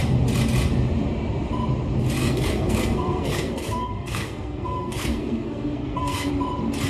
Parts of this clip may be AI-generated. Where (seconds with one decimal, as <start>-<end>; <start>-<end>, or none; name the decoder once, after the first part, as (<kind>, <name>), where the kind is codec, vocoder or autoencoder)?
2.2-6.3 (codec, SNAC)

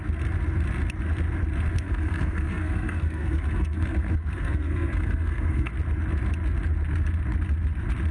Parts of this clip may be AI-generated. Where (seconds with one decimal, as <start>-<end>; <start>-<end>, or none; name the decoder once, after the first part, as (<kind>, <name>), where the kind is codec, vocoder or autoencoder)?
1.7-5.7 (codec, SNAC)

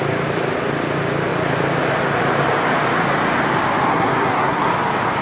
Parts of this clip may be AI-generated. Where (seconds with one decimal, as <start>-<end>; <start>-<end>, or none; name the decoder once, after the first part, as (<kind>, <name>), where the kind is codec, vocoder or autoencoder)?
3.9-4.7 (codec, SNAC)

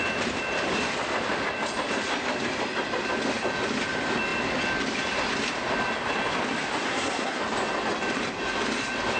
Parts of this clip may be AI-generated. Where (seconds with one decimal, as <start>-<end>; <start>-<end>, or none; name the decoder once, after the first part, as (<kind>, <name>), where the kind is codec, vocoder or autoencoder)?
6.8-7.4 (codec, SNAC)